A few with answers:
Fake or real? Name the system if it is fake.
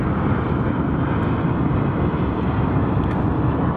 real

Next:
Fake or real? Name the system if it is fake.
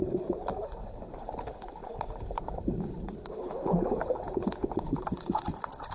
fake, codec, HILCodec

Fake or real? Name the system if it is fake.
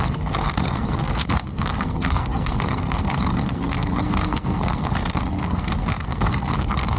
fake, codec, SNAC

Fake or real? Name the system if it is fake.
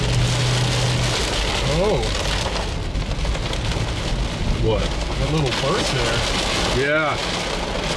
real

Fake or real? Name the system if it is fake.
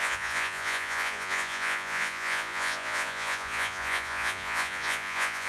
fake, vocoder, Vocos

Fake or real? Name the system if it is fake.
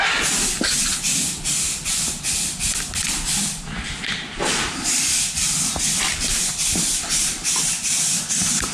real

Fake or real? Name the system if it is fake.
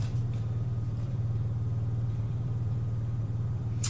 fake, vocoder, BigVGAN v2